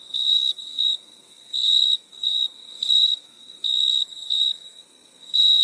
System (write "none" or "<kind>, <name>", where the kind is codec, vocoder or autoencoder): codec, SNAC